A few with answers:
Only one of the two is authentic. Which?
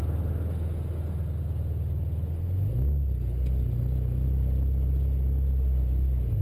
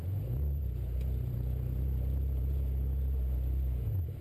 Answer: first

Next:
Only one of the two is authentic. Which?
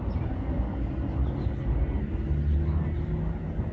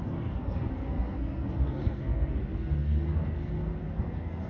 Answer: first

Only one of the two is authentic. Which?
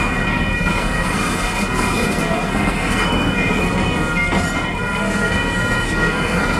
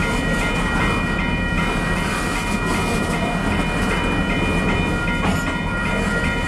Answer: second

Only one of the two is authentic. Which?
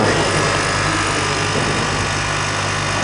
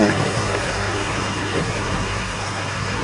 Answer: first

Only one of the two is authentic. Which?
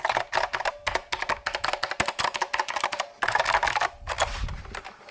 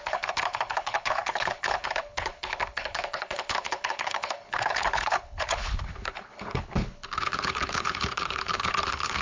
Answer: first